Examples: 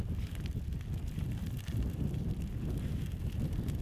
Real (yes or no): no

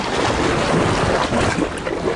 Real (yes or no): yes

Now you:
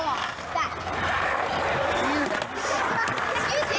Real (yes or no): yes